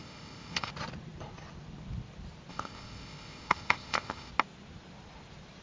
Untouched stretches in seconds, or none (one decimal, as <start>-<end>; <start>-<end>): 0.7-2.5; 4.3-5.6